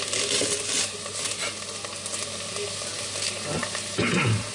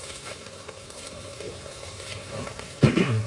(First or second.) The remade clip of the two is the second